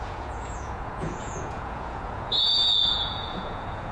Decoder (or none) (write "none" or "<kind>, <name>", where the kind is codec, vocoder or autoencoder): vocoder, Vocos